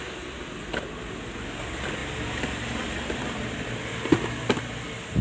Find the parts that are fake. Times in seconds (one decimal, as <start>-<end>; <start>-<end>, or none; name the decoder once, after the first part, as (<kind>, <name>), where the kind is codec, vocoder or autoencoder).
none